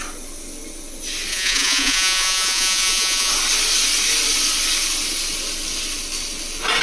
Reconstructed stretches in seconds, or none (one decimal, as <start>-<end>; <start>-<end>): 1.3-3.3